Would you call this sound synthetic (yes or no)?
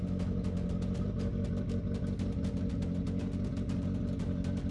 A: no